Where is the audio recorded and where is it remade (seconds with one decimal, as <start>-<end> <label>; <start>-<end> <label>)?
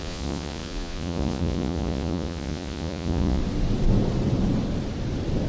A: 0.0-3.4 remade; 3.4-5.5 recorded